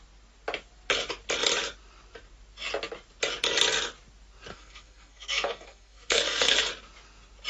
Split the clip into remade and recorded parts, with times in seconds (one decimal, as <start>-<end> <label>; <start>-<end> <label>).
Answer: 0.0-4.5 recorded; 4.5-6.7 remade; 6.7-7.5 recorded